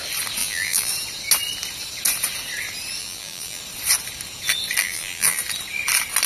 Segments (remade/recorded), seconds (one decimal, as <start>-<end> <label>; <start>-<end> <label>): 0.0-0.4 recorded; 0.4-0.9 remade; 0.9-3.0 recorded; 3.0-3.6 remade; 3.6-4.8 recorded; 4.8-5.4 remade; 5.4-6.3 recorded